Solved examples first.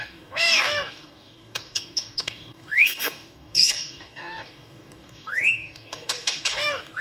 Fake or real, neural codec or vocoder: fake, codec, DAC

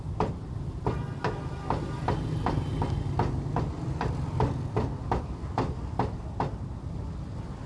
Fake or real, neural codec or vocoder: real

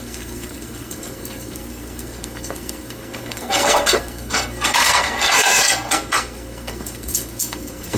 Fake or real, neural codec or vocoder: fake, codec, SNAC